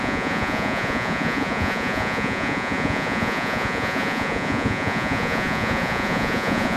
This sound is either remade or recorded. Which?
remade